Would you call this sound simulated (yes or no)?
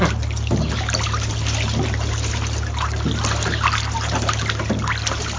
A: no